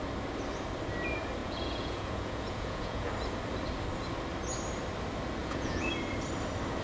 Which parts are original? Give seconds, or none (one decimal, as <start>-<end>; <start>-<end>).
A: 0.0-1.4; 3.1-5.4; 5.9-6.8